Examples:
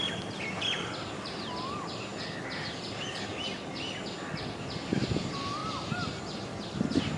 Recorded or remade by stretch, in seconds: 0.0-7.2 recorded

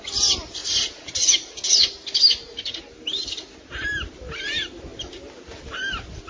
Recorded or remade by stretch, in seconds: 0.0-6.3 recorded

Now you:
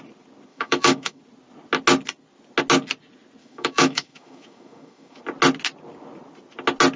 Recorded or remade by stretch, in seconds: 0.0-0.5 recorded; 0.5-1.2 remade; 1.2-3.4 recorded; 3.4-5.2 remade; 5.2-7.0 recorded

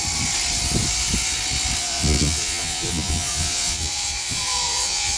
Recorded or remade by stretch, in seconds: 0.0-1.8 recorded; 1.8-5.2 remade